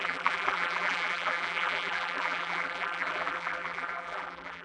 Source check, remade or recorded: remade